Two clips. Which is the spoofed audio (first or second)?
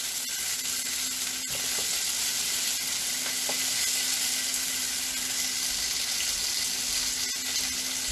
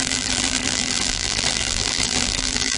second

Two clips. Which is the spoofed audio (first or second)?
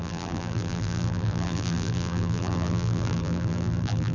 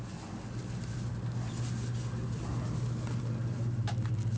first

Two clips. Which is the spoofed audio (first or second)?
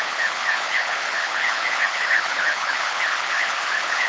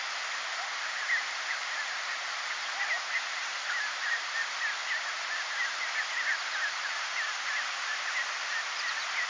first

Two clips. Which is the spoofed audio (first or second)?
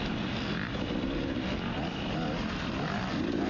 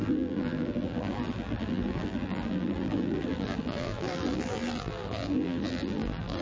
second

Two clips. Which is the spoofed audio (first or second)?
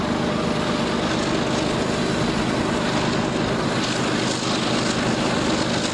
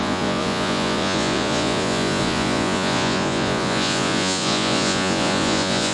second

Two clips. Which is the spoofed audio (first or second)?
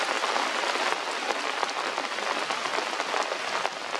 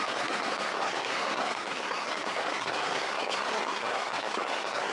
second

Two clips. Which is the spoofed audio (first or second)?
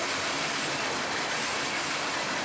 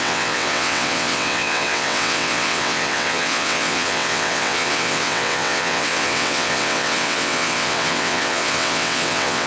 second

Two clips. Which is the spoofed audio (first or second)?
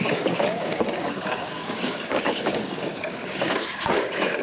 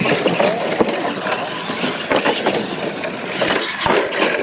first